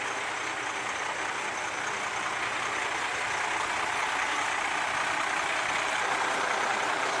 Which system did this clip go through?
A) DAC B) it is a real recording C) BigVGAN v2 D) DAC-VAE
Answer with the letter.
B